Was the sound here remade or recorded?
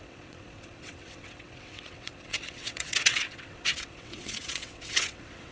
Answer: remade